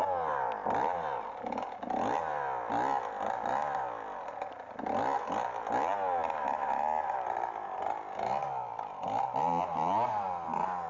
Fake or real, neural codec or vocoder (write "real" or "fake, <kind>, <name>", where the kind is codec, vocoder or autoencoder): real